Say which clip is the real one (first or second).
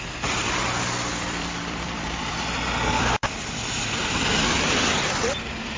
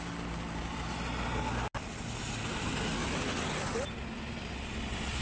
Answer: second